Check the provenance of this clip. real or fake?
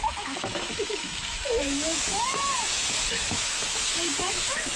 fake